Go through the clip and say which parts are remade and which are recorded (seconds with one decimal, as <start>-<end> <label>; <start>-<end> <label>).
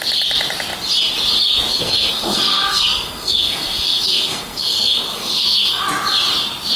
0.0-1.7 recorded; 1.7-5.8 remade; 5.8-6.8 recorded